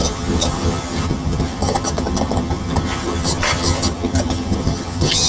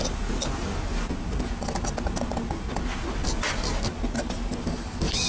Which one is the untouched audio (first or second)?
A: second